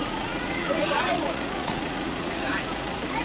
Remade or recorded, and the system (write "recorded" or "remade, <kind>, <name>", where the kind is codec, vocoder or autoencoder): remade, vocoder, Vocos